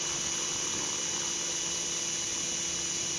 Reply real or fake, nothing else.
real